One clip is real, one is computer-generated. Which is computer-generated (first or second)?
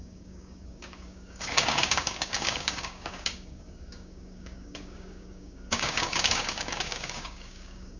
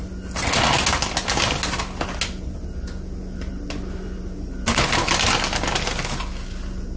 first